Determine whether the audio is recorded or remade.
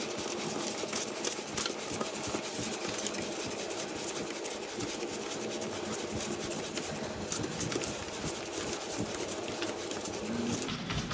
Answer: recorded